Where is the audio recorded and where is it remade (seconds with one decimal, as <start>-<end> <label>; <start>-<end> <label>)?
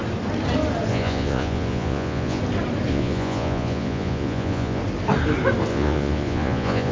0.0-0.9 recorded; 0.9-2.4 remade; 2.4-2.9 recorded; 2.9-4.8 remade; 4.8-5.7 recorded; 5.7-6.9 remade